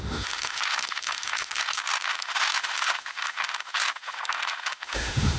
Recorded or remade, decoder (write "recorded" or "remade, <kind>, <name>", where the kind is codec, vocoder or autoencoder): remade, autoencoder, DAC-VAE